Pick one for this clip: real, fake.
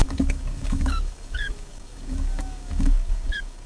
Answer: fake